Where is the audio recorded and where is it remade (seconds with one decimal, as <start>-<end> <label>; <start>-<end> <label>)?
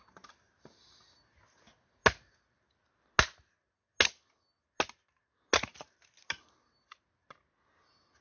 0.0-8.2 recorded